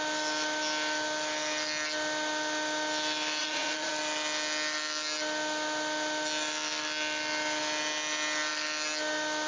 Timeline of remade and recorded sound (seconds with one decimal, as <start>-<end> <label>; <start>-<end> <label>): 0.0-3.4 recorded; 3.4-3.9 remade; 3.9-9.5 recorded